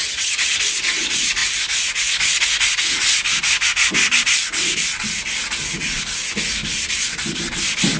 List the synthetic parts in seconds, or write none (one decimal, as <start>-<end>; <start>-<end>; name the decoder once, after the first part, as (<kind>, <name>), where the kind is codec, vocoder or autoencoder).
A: 0.0-0.6 (vocoder, HiFi-GAN)